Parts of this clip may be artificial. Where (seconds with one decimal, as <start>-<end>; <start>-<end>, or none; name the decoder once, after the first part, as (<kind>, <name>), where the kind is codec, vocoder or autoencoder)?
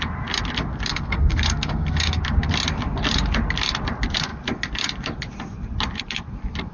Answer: 0.9-2.2 (codec, SNAC)